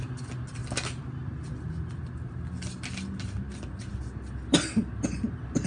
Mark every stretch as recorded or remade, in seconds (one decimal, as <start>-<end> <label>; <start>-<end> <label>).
0.0-5.7 recorded